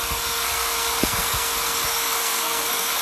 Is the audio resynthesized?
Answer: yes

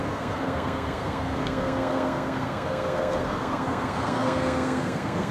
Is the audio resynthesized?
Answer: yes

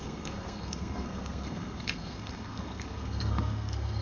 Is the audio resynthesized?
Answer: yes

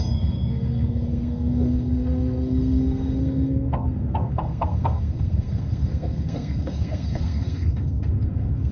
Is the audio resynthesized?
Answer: yes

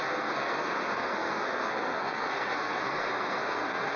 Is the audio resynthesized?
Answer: yes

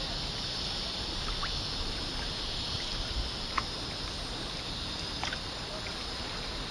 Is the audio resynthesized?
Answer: no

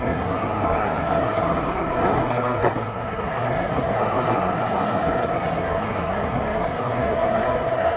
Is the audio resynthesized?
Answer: yes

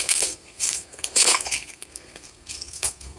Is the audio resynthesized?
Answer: yes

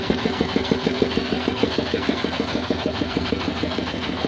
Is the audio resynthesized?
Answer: yes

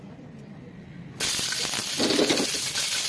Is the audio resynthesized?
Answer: no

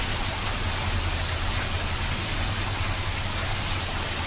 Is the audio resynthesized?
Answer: no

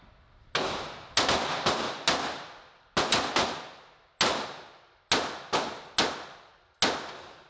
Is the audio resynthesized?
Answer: no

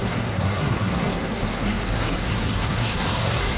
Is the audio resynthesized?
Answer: yes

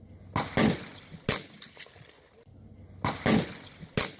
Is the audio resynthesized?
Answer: no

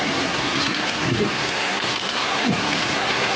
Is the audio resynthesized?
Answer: yes